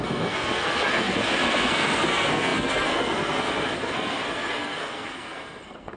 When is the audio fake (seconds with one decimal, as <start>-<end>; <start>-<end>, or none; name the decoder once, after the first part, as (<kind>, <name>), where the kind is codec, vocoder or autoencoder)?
0.0-6.0 (codec, SNAC)